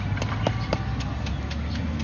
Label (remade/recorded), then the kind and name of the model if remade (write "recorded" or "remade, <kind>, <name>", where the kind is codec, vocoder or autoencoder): recorded